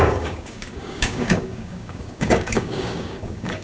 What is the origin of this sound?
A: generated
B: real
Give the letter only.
A